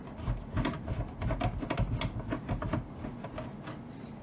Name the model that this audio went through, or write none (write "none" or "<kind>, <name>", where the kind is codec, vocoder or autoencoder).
none